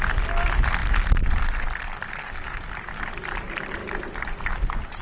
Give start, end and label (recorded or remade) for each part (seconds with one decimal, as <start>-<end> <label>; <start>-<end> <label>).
0.0-5.0 recorded